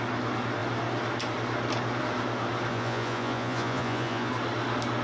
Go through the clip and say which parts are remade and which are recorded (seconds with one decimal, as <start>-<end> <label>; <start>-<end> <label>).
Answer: 0.0-2.7 recorded; 2.7-4.3 remade; 4.3-5.0 recorded